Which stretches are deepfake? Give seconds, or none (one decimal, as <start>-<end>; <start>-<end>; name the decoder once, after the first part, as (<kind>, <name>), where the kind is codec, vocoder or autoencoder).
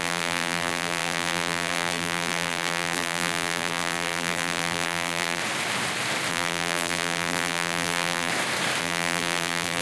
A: 0.0-5.4 (vocoder, BigVGAN v2); 6.3-8.3; 8.8-9.8